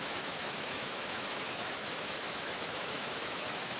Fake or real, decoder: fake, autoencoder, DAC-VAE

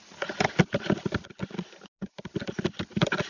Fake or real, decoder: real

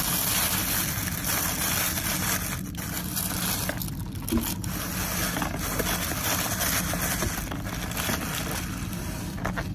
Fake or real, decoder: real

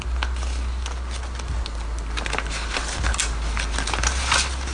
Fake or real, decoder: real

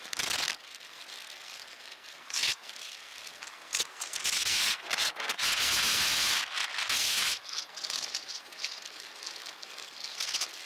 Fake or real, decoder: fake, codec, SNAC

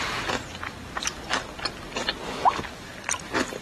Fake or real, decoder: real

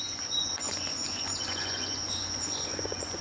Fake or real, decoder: fake, vocoder, Vocos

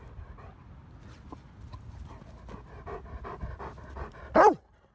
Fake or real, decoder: real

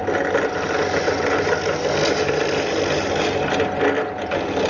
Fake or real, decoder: real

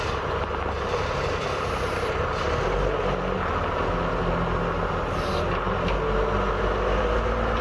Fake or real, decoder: real